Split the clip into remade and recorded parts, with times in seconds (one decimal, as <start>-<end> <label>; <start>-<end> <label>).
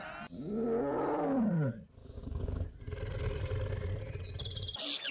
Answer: 0.0-2.0 recorded; 2.0-2.7 remade; 2.7-5.1 recorded